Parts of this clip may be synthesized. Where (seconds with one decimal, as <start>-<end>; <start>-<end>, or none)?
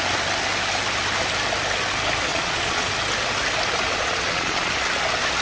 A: 2.3-2.9; 3.9-4.7